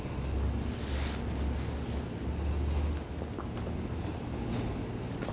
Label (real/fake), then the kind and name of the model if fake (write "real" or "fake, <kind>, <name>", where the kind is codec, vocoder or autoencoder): real